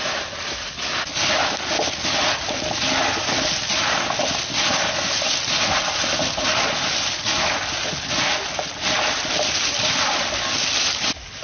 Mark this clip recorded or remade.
recorded